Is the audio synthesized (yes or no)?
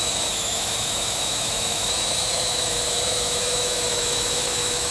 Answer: yes